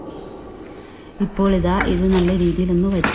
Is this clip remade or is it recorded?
recorded